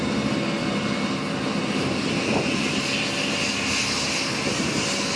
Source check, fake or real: real